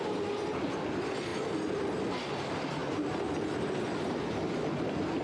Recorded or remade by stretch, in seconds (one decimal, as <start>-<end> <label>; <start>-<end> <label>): 0.0-5.2 recorded

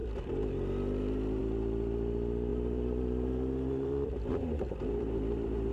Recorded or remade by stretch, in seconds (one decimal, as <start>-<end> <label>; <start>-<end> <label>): 0.0-2.5 recorded; 2.5-5.7 remade

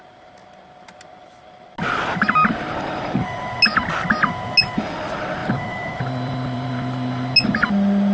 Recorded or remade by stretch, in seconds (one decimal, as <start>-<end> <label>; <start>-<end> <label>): 0.0-5.4 recorded; 5.4-6.7 remade; 6.7-8.1 recorded

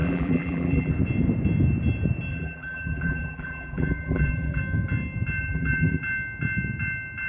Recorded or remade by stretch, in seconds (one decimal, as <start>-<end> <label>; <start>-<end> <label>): 0.0-0.9 remade; 0.9-2.3 recorded; 2.3-4.6 remade; 4.6-5.4 recorded; 5.4-6.0 remade; 6.0-7.3 recorded

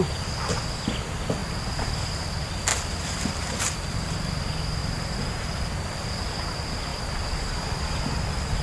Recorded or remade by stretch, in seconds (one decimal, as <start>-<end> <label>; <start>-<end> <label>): 0.0-2.7 recorded; 2.7-4.1 remade; 4.1-4.8 recorded; 4.8-6.0 remade; 6.0-8.6 recorded

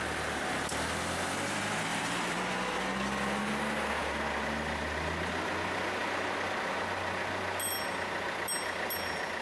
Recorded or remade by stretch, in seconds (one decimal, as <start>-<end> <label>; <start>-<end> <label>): 0.0-1.9 recorded; 1.9-2.4 remade; 2.4-9.4 recorded

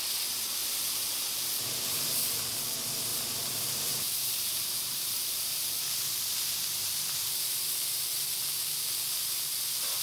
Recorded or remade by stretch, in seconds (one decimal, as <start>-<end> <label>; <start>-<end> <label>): 0.0-0.6 recorded; 0.6-2.2 remade; 2.2-3.1 recorded; 3.1-5.6 remade; 5.6-6.8 recorded; 6.8-7.7 remade; 7.7-10.0 recorded

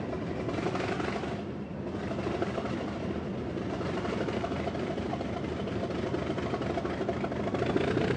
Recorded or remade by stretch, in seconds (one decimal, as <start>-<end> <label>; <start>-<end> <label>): 0.0-1.7 recorded; 1.7-5.9 remade; 5.9-8.2 recorded